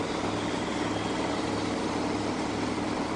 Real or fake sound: real